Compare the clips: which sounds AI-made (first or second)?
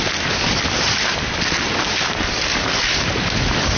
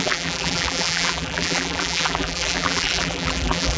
second